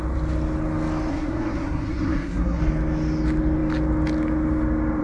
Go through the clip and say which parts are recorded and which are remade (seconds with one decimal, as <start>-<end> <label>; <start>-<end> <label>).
0.0-1.1 recorded; 1.1-2.6 remade; 2.6-5.0 recorded